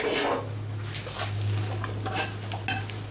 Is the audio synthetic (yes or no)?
no